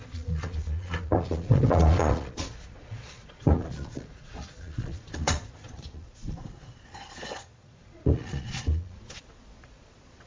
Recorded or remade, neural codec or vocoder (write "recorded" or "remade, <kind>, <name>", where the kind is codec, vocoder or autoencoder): remade, vocoder, Vocos